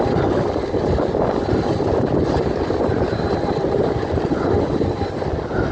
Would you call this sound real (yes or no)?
yes